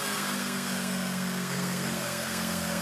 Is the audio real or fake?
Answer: fake